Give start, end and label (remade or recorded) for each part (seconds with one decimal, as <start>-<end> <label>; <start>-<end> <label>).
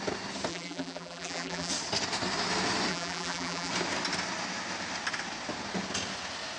0.0-0.5 recorded; 0.5-1.7 remade; 1.7-2.9 recorded; 2.9-3.7 remade; 3.7-6.6 recorded